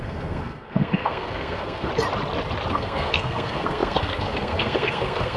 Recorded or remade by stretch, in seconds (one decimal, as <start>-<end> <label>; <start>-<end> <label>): 0.0-1.9 remade; 1.9-2.7 recorded; 2.7-5.4 remade